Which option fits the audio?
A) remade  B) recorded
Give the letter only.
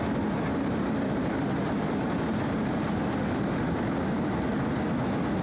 B